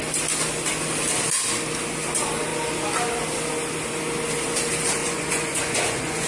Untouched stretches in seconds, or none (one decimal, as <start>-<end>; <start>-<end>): 0.0-5.0